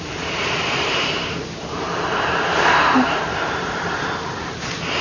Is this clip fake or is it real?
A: fake